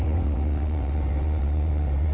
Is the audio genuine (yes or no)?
no